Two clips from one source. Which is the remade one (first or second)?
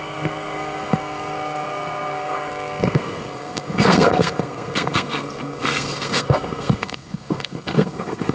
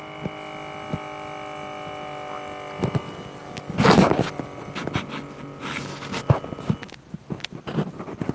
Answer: first